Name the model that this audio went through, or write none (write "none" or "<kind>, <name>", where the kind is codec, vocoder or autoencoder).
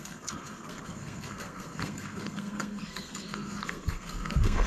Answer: codec, SNAC